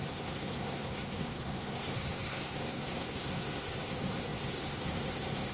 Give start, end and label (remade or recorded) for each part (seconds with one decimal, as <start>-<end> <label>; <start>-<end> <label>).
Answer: 0.0-5.5 remade